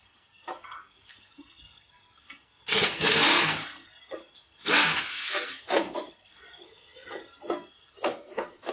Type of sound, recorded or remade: remade